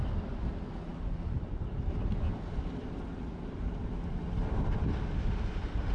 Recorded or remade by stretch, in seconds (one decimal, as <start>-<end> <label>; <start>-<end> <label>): 0.0-5.9 recorded

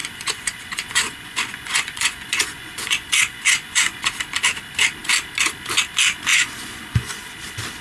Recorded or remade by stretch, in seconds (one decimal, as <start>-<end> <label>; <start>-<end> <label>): 0.0-4.1 remade; 4.1-6.3 recorded; 6.3-7.3 remade; 7.3-7.8 recorded

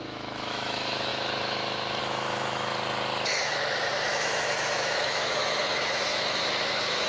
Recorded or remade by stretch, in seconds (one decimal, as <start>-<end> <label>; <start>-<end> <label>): 0.0-2.7 remade; 2.7-3.4 recorded; 3.4-7.1 remade